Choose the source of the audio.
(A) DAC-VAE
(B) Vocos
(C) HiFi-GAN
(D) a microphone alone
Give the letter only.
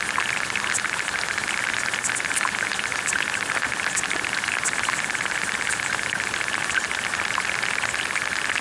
D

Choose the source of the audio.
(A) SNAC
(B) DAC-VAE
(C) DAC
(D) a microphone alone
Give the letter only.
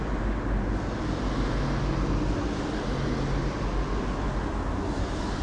D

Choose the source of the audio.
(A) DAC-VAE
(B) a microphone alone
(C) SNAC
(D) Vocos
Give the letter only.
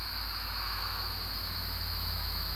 A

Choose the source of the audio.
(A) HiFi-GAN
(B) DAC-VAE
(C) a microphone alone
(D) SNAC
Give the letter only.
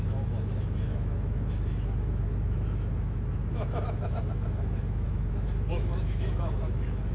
B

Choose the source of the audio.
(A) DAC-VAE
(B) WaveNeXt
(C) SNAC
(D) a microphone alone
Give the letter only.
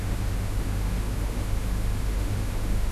A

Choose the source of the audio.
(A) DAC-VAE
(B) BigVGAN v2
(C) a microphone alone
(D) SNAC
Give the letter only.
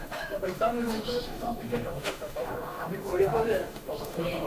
A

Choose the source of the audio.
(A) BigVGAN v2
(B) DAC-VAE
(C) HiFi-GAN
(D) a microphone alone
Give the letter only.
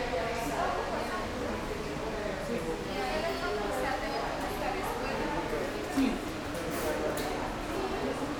D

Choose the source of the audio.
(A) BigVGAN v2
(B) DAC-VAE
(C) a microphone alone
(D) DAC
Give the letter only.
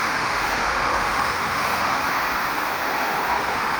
B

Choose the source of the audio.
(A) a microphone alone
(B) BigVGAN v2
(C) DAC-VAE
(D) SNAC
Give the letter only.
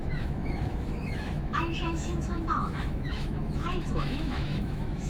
C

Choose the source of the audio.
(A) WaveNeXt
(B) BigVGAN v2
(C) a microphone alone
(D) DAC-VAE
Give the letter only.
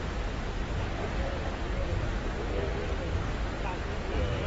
C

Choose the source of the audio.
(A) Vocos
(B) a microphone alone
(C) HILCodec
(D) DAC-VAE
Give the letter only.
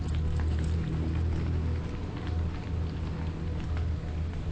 B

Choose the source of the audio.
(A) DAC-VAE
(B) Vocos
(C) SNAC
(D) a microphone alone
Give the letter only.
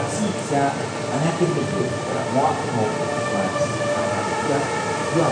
D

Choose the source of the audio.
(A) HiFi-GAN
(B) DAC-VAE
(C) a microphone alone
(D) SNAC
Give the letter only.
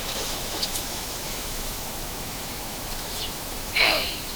B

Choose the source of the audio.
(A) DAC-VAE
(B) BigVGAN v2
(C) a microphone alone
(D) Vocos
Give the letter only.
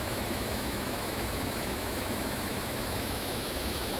A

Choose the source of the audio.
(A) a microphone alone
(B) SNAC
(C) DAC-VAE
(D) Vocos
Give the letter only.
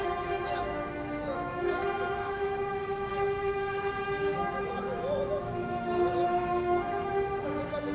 C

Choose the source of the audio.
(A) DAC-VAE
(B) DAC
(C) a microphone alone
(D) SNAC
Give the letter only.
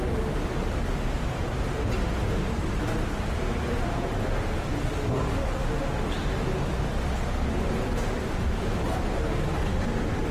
C